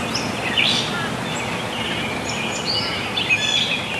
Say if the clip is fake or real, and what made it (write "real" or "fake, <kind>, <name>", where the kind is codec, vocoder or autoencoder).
real